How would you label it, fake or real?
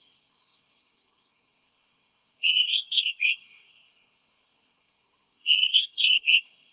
fake